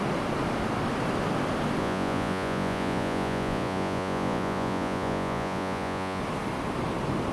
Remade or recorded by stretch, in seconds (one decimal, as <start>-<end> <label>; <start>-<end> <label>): 0.0-1.8 recorded; 1.8-6.2 remade; 6.2-7.3 recorded